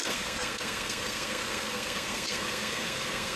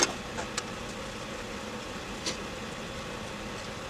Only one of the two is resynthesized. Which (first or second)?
first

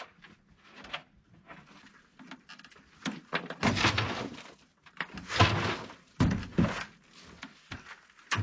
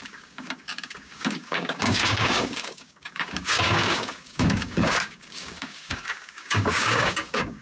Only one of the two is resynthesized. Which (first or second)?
second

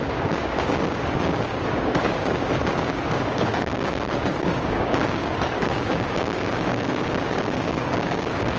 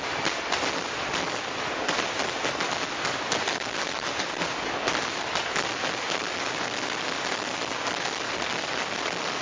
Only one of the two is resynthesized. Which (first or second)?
first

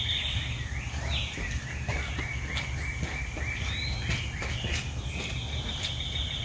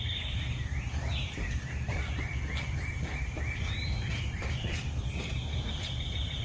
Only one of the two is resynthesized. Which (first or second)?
second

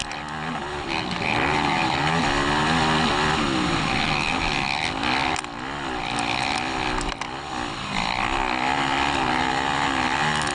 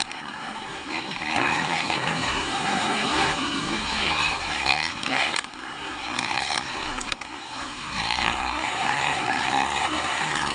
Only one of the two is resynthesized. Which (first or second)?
second